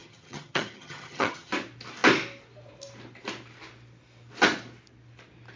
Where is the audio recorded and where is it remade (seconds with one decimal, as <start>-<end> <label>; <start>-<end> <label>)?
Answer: 0.0-1.5 remade; 1.5-5.6 recorded